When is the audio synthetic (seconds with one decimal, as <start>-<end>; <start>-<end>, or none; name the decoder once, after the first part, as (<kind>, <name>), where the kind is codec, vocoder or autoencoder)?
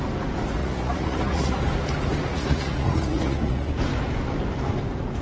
0.6-1.6 (vocoder, Vocos); 2.3-3.7